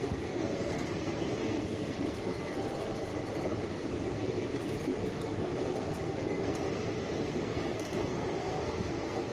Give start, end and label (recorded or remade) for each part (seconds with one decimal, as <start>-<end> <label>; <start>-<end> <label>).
0.0-3.1 remade; 3.1-3.7 recorded; 3.7-9.3 remade